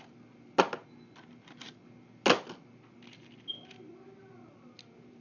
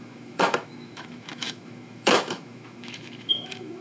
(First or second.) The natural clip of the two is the first